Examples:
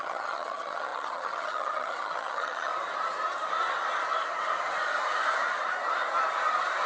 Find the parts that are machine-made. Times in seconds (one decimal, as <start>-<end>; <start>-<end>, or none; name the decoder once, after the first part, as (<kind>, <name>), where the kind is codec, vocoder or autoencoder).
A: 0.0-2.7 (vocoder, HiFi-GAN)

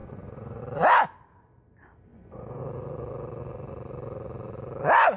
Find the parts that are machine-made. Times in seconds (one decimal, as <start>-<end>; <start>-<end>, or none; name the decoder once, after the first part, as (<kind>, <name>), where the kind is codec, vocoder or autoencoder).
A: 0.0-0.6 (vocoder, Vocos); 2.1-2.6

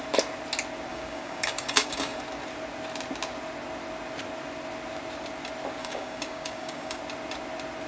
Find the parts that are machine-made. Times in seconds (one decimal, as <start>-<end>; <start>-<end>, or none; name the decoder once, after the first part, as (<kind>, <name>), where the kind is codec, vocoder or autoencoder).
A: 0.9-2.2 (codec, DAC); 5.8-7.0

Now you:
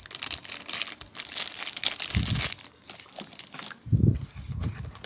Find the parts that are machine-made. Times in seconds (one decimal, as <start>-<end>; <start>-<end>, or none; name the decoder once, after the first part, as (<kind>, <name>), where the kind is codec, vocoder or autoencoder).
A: none